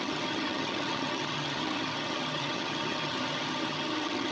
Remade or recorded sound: remade